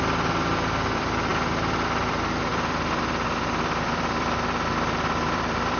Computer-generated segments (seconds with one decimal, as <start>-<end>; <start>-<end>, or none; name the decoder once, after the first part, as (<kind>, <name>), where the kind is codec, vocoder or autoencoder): 0.0-1.3 (vocoder, BigVGAN v2); 2.0-5.8